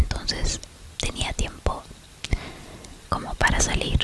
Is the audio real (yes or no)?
yes